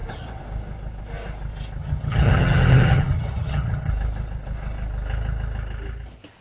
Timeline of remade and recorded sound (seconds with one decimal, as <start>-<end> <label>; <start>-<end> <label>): 0.0-1.8 recorded; 1.8-3.9 remade; 3.9-6.4 recorded